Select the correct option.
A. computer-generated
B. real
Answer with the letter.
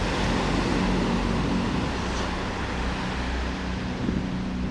B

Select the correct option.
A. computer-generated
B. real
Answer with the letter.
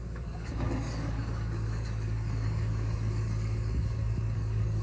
A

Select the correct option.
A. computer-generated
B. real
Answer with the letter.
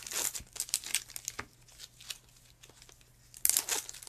B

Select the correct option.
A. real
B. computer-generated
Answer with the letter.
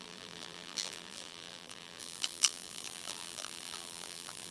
B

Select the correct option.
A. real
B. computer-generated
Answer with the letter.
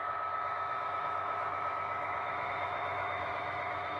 B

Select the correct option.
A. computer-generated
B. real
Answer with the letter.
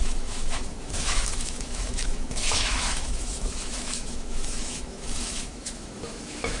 A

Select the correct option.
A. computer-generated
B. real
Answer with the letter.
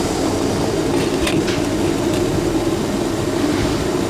B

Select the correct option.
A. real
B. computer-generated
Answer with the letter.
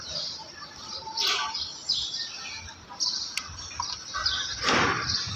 A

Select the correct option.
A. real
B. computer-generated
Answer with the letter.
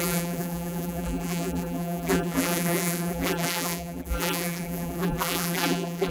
B